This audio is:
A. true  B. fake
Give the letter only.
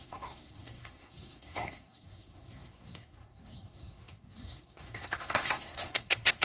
B